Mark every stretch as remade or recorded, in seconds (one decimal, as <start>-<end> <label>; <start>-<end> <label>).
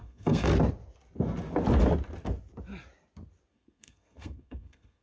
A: 0.0-0.5 remade; 0.5-3.5 recorded; 3.5-5.0 remade